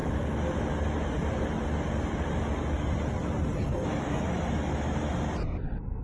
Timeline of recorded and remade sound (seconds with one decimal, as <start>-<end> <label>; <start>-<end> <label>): 0.0-3.7 recorded; 3.7-5.2 remade; 5.2-6.0 recorded